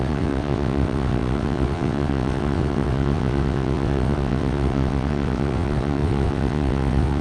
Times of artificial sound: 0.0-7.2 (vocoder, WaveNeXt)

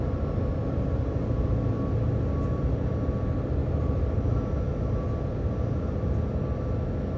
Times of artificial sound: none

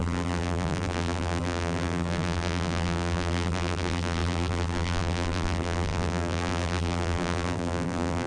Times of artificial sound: 0.0-8.3 (vocoder, BigVGAN v2)